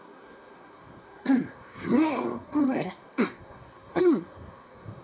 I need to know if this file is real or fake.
fake